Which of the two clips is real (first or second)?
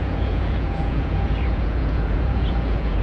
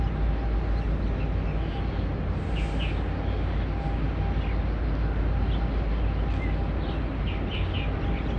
second